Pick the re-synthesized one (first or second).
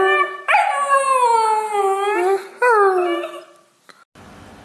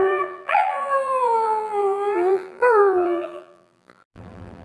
second